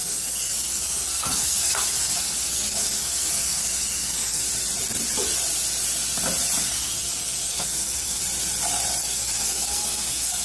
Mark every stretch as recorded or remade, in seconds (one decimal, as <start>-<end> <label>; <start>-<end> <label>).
0.0-4.5 remade; 4.5-6.7 recorded; 6.7-8.2 remade; 8.2-9.0 recorded; 9.0-10.4 remade